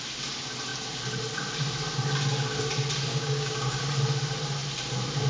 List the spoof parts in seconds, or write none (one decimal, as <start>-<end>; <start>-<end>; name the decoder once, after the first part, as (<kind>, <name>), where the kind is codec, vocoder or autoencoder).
3.1-3.8 (codec, DAC)